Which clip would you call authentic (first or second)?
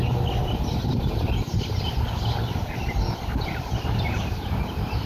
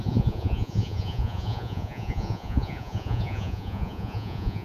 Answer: first